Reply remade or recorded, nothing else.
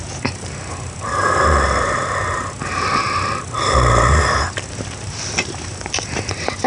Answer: recorded